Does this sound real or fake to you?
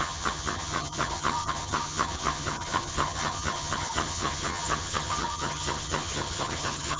fake